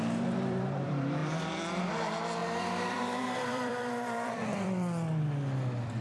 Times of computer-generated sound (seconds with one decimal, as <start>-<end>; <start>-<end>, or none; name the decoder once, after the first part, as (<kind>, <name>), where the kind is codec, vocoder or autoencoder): 0.0-6.0 (vocoder, BigVGAN v2)